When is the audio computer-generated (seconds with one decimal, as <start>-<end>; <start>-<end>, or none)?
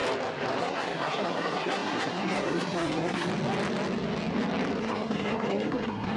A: 0.6-3.3; 4.8-6.2